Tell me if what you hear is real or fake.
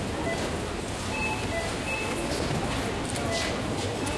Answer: real